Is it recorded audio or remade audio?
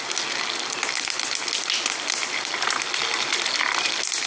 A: recorded